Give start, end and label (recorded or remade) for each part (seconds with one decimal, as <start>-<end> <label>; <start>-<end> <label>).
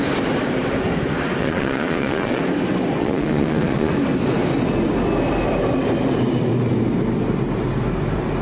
0.0-1.4 recorded; 1.4-2.4 remade; 2.4-3.0 recorded; 3.0-3.9 remade; 3.9-8.4 recorded